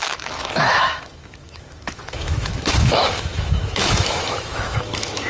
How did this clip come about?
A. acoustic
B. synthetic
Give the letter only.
B